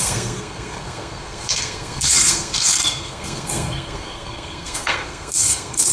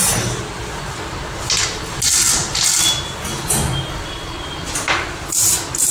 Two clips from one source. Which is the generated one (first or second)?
first